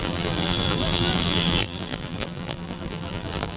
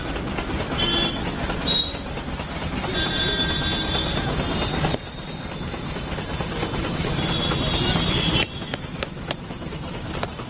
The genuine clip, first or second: second